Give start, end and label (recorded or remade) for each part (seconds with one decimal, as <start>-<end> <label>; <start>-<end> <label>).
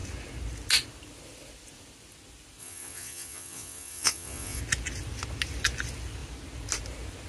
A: 0.0-2.6 recorded; 2.6-4.6 remade; 4.6-7.3 recorded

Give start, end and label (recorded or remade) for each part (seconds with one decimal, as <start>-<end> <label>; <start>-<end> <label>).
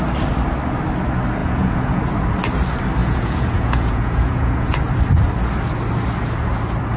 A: 0.0-1.4 recorded; 1.4-2.0 remade; 2.0-3.0 recorded; 3.0-4.7 remade; 4.7-7.0 recorded